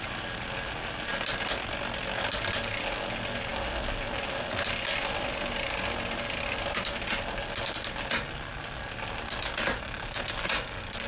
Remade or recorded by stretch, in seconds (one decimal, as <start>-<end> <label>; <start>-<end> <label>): 0.0-11.1 recorded